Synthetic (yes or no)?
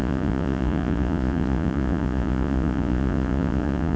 yes